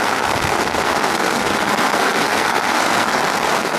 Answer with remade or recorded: remade